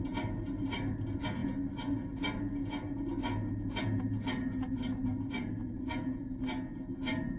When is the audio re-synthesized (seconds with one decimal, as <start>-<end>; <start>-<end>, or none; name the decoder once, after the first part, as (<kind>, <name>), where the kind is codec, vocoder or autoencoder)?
none